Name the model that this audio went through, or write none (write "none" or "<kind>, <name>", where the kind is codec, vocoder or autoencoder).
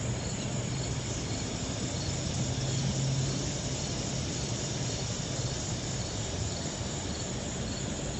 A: vocoder, BigVGAN v2